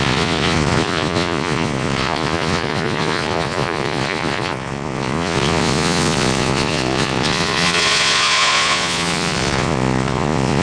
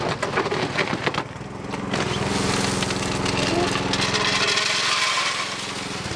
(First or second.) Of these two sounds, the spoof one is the first